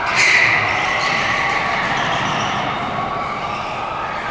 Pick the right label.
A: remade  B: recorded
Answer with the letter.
B